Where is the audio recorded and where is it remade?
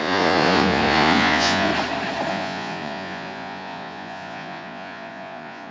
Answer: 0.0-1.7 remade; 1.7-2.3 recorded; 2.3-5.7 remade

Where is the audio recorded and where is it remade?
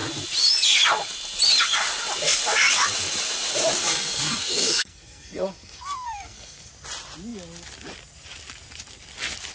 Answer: 0.0-3.8 recorded; 3.8-6.7 remade; 6.7-9.5 recorded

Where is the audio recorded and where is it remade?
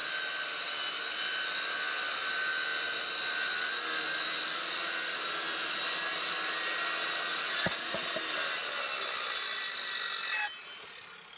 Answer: 0.0-7.3 recorded; 7.3-8.0 remade; 8.0-11.4 recorded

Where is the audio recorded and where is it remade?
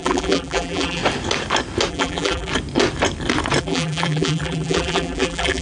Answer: 0.0-1.0 remade; 1.0-1.9 recorded; 1.9-2.5 remade; 2.5-3.6 recorded; 3.6-5.6 remade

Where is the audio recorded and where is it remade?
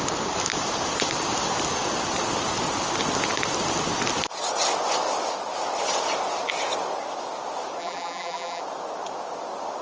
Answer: 0.0-7.8 recorded; 7.8-8.6 remade; 8.6-9.8 recorded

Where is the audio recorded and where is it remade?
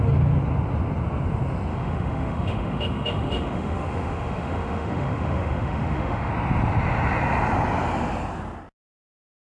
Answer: 0.0-1.7 recorded; 1.7-6.3 remade; 6.3-9.4 recorded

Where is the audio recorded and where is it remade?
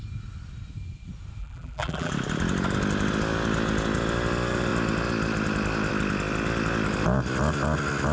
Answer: 0.0-1.4 recorded; 1.4-2.1 remade; 2.1-8.1 recorded